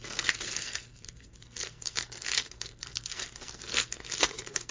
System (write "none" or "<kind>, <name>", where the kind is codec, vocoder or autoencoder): codec, SNAC